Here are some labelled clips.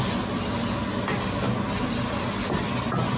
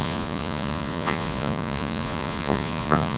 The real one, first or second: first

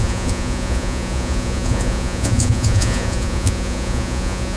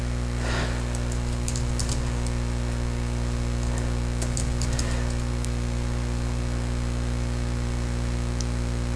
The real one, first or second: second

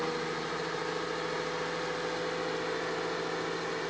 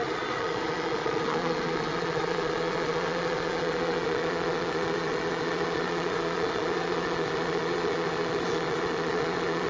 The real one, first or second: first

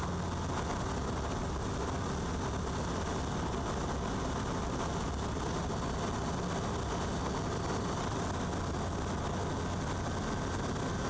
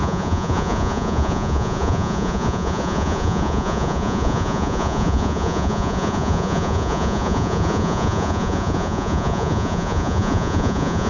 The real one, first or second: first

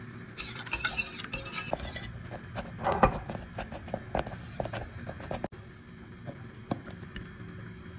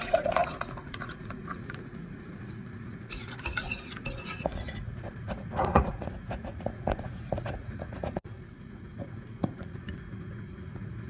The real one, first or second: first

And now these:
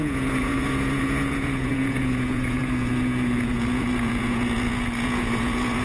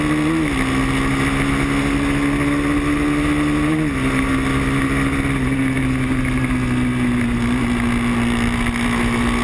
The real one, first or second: second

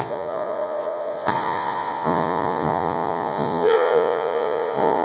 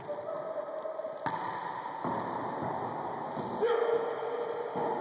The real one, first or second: second